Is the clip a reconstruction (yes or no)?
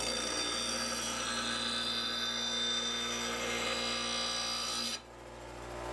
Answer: no